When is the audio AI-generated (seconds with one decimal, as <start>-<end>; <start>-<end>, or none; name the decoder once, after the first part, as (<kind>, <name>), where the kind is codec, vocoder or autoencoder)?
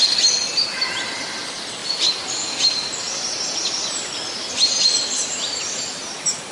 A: none